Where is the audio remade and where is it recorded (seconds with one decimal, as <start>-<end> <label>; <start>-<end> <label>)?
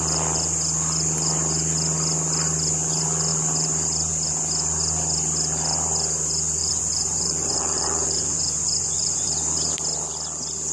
0.0-6.6 recorded; 6.6-9.3 remade; 9.3-10.7 recorded